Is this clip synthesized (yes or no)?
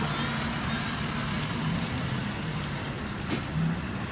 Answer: no